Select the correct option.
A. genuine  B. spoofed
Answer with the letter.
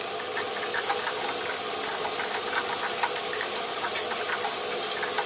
A